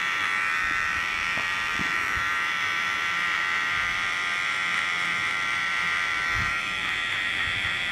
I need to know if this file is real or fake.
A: fake